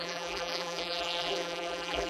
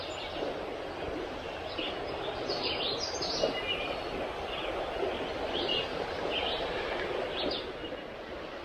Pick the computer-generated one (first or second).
first